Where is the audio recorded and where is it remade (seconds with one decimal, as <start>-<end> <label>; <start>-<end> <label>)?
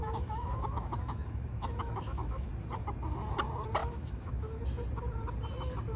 0.0-2.5 remade; 2.5-3.8 recorded; 3.8-4.6 remade; 4.6-6.0 recorded